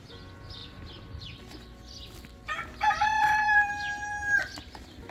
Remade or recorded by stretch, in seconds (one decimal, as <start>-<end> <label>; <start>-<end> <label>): 0.0-0.6 recorded; 0.6-3.7 remade; 3.7-5.1 recorded